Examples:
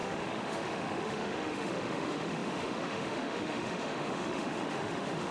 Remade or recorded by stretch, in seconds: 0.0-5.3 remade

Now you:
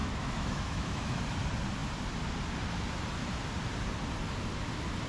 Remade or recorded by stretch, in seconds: 0.0-1.2 remade; 1.2-5.1 recorded

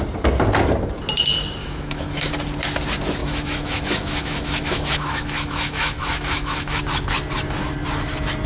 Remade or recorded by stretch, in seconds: 0.0-1.6 recorded; 1.6-2.3 remade; 2.3-3.2 recorded; 3.2-6.8 remade; 6.8-8.5 recorded

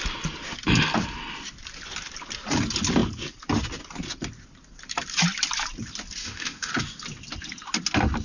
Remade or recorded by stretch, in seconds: 0.0-6.2 recorded; 6.2-6.7 remade; 6.7-8.2 recorded

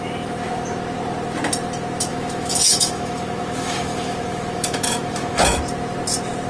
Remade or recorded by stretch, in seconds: 0.0-2.1 recorded; 2.1-5.6 remade; 5.6-6.5 recorded

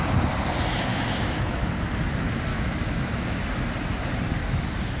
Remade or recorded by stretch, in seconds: 0.0-0.9 recorded; 0.9-1.7 remade; 1.7-2.5 recorded; 2.5-3.4 remade; 3.4-5.0 recorded

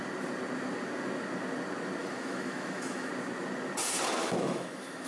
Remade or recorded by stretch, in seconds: 0.0-2.0 recorded; 2.0-3.1 remade; 3.1-4.2 recorded; 4.2-5.1 remade